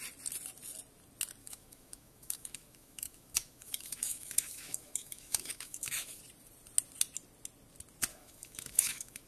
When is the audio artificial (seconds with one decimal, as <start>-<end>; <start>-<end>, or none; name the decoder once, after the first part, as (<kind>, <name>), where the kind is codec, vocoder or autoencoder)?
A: 1.4-6.2 (autoencoder, DAC-VAE); 8.1-9.3